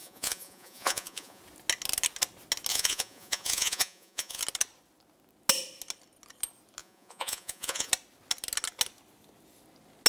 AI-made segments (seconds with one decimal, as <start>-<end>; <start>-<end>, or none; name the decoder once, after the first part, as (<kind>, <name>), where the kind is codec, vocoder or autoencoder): 0.0-1.4 (vocoder, Vocos); 2.7-4.4; 6.8-7.9